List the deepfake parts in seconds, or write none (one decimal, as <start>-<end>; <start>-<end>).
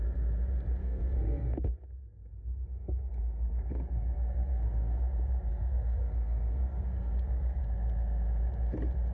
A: 0.8-5.0; 5.5-7.6